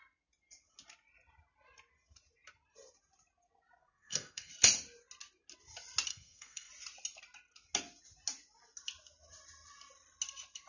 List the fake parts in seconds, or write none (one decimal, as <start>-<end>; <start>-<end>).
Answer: 3.8-4.5; 6.1-6.7